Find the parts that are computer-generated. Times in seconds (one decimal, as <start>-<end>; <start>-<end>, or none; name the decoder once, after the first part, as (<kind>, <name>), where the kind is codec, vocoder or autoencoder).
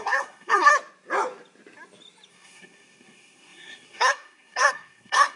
0.0-0.7 (codec, SNAC); 2.3-5.4